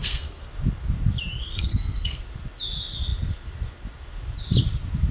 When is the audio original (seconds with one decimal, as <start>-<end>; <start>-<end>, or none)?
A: 0.5-1.4; 2.2-5.1